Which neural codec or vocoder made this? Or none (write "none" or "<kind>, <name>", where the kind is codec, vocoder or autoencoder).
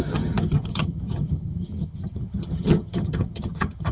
vocoder, HiFi-GAN